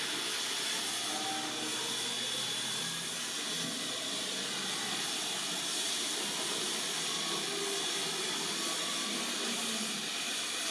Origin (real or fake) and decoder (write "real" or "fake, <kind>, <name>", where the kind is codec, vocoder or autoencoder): real